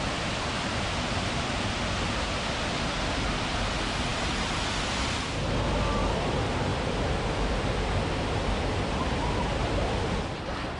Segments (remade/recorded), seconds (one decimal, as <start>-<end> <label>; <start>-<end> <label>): 0.0-4.1 recorded; 4.1-4.6 remade; 4.6-6.7 recorded; 6.7-9.7 remade; 9.7-10.8 recorded